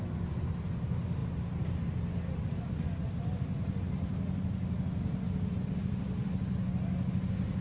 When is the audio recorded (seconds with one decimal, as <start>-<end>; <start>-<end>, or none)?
0.0-7.6